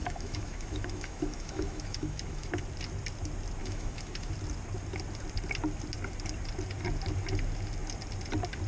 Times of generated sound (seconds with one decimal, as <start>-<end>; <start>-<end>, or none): 0.0-2.5; 3.6-4.3